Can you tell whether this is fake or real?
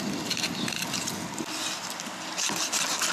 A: real